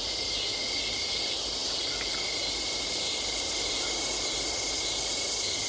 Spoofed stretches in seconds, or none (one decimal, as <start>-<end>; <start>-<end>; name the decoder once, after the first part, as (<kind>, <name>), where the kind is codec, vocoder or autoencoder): none